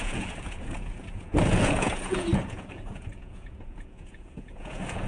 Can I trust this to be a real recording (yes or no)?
no